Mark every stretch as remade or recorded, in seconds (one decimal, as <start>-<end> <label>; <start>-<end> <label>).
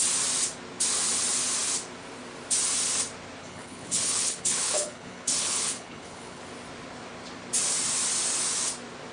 0.0-3.4 recorded; 3.4-6.4 remade; 6.4-9.1 recorded